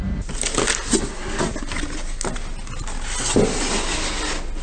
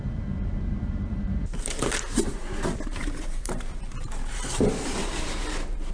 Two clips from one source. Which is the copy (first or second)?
second